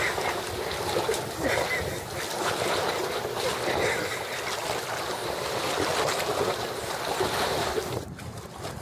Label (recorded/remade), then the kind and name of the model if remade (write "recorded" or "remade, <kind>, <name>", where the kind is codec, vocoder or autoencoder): recorded